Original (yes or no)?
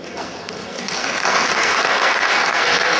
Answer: no